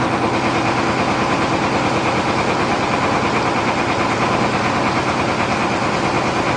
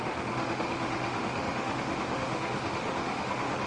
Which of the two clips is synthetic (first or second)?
second